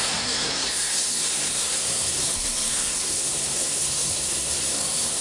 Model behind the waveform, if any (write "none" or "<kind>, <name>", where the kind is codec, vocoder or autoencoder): codec, SNAC